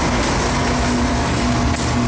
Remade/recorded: recorded